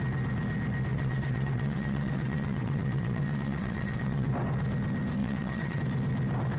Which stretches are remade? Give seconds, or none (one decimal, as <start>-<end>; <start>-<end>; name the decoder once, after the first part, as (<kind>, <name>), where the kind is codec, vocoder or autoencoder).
0.9-4.3 (vocoder, WaveNeXt); 5.2-5.8